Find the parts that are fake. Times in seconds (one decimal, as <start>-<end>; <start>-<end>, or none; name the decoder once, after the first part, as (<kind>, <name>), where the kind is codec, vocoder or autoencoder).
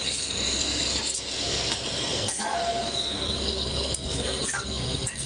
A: 0.0-5.3 (codec, SNAC)